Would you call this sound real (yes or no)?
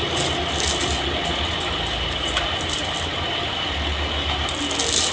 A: yes